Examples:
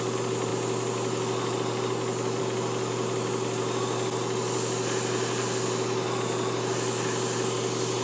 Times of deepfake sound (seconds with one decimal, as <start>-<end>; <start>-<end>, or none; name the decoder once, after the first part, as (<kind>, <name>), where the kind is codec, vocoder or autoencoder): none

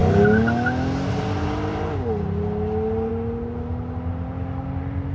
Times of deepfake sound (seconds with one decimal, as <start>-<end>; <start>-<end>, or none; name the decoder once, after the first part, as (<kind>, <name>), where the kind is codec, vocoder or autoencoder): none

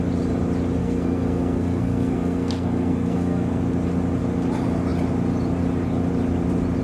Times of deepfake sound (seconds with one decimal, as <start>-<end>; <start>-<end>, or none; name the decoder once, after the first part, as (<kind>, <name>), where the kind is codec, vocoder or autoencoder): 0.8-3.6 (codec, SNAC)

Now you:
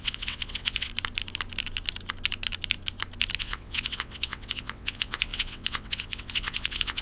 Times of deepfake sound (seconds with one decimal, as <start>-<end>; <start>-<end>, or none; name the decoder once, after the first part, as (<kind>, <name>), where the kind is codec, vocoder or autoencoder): 0.0-0.9 (vocoder, WaveNeXt); 3.4-7.0

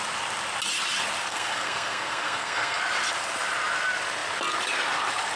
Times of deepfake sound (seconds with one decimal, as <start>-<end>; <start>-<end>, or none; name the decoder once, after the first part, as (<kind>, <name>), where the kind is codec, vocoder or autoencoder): 1.3-2.8 (codec, SNAC)